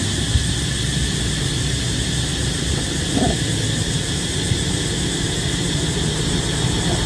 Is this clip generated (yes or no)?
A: no